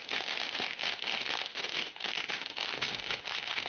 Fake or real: fake